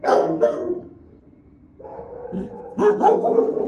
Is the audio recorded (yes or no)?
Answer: no